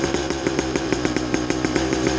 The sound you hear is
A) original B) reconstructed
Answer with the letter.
B